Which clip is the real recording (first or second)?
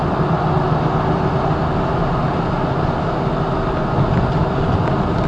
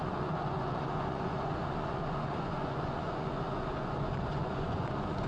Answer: first